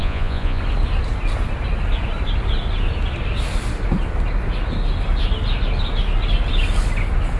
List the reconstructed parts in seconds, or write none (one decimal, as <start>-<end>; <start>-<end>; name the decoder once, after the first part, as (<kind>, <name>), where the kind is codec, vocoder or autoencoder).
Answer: 0.0-0.6 (vocoder, Vocos)